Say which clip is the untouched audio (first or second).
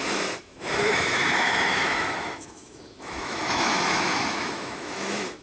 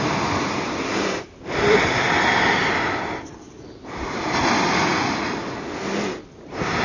second